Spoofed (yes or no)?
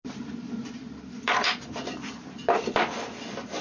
no